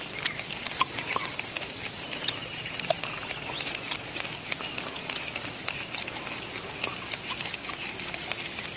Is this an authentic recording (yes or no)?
yes